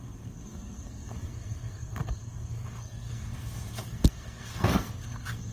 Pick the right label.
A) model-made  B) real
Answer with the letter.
A